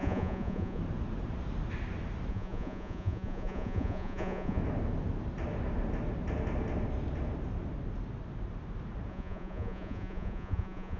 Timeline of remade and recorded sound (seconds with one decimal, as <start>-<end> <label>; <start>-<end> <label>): 0.0-0.8 remade; 0.8-2.3 recorded; 2.3-4.6 remade; 4.6-9.1 recorded; 9.1-11.0 remade